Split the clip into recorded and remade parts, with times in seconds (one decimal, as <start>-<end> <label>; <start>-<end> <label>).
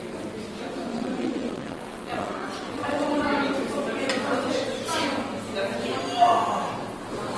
0.0-0.9 recorded; 0.9-3.2 remade; 3.2-7.4 recorded